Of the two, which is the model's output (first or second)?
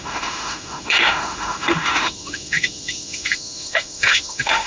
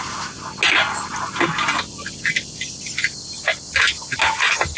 first